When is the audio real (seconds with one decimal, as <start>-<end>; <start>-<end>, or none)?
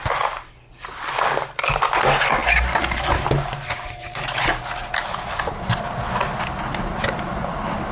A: 0.0-6.7; 7.3-7.9